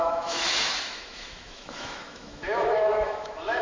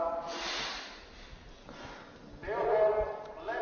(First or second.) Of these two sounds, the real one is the second